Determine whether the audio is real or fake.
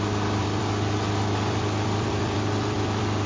fake